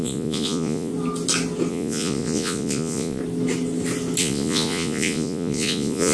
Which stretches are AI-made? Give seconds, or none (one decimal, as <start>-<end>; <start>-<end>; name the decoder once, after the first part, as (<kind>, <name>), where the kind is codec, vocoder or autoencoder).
0.0-0.9 (vocoder, Vocos); 1.7-3.2; 4.2-6.1